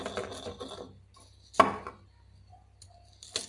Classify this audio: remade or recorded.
recorded